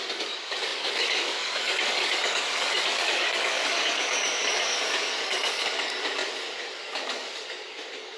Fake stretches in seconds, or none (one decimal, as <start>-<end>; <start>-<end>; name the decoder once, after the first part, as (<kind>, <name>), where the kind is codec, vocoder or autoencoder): 0.0-8.2 (codec, DAC)